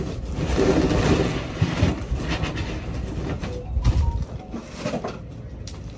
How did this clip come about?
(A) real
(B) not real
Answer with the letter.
A